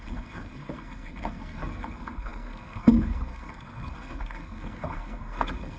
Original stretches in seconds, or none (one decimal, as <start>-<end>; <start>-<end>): none